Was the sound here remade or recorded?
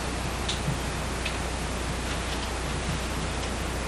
recorded